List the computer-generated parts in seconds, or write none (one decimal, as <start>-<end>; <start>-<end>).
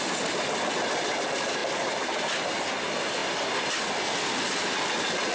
none